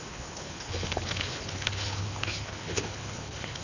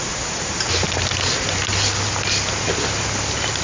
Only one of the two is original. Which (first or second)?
second